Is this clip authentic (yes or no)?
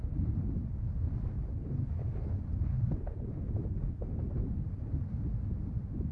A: yes